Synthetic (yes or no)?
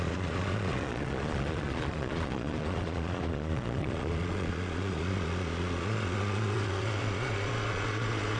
yes